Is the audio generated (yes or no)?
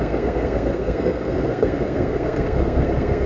yes